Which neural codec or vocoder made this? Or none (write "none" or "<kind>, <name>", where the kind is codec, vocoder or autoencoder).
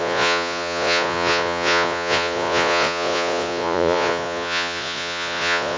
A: vocoder, Vocos